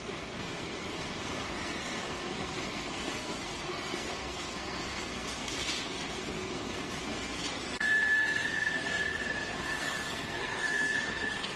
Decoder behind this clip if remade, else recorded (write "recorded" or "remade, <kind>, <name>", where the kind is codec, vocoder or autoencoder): remade, codec, SNAC